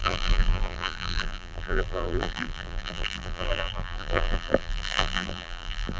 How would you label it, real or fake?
fake